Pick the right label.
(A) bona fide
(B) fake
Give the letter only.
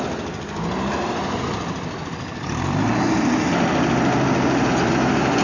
A